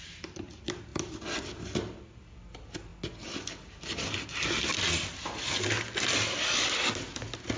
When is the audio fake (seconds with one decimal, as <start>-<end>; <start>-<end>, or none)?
none